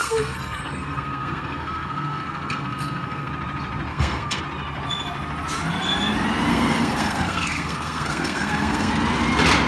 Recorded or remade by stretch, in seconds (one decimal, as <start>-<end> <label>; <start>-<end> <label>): 0.0-3.3 remade; 3.3-3.9 recorded; 3.9-4.4 remade; 4.4-6.5 recorded; 6.5-8.9 remade; 8.9-9.7 recorded